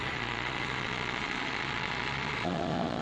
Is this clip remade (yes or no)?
yes